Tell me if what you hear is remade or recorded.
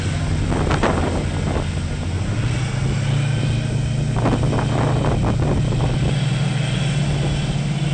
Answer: recorded